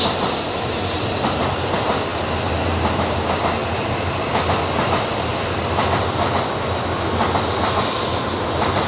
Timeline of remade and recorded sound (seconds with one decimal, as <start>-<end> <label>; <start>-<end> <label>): 0.0-3.6 remade; 3.6-8.5 recorded; 8.5-8.9 remade